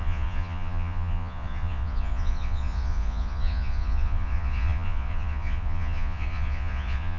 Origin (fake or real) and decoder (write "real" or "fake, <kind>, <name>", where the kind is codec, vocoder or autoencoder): fake, vocoder, Vocos